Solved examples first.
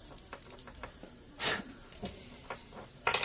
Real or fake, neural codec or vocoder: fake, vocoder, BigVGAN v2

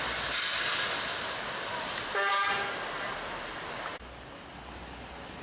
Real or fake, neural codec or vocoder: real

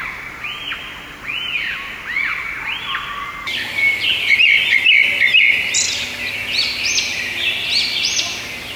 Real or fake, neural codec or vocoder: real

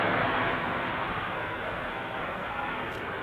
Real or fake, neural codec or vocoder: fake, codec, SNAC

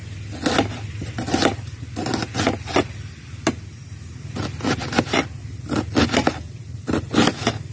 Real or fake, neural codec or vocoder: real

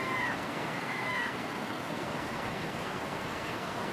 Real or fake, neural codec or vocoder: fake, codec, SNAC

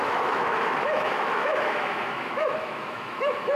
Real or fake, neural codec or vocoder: fake, autoencoder, DAC-VAE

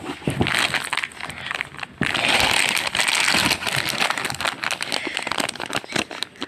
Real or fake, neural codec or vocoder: real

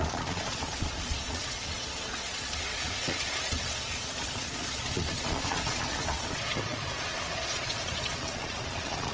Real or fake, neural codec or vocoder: fake, vocoder, Vocos